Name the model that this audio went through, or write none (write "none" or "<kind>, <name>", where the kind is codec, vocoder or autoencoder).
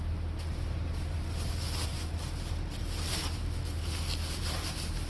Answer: none